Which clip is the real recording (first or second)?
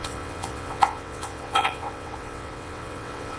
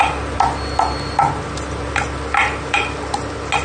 second